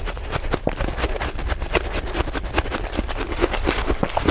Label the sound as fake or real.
real